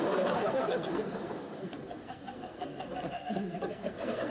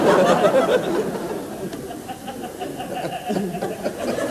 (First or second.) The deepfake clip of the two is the first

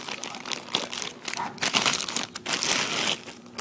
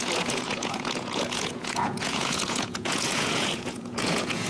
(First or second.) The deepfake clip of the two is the second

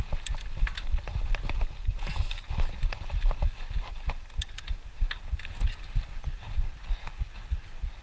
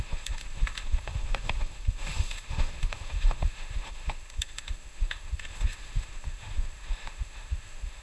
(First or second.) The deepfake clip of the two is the second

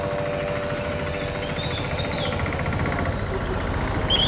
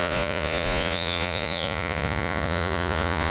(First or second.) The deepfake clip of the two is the second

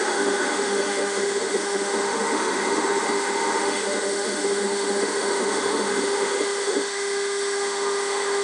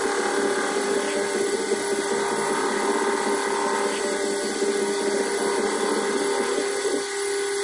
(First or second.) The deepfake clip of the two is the first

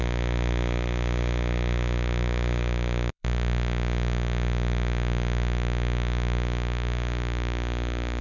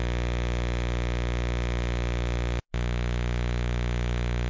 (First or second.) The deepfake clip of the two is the first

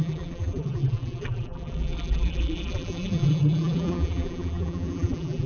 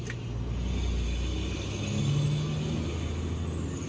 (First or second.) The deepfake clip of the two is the first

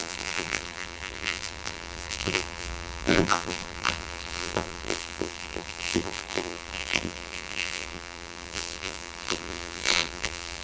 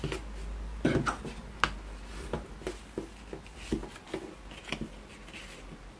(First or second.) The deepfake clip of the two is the first